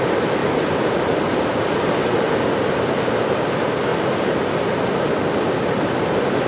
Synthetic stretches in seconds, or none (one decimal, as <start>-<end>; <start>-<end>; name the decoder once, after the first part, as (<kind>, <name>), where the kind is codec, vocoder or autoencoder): none